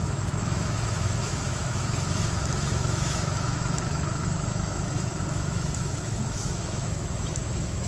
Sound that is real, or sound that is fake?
fake